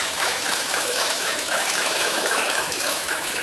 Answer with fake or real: fake